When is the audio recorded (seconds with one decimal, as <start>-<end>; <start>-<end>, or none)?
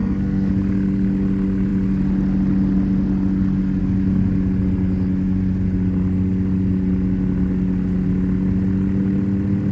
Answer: 0.5-9.7